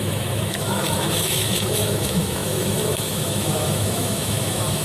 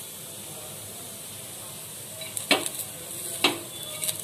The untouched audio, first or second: second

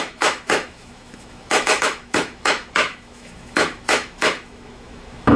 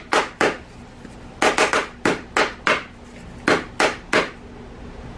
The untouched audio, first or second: second